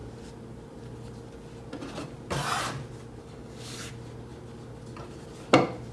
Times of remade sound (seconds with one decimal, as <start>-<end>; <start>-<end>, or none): 3.2-3.9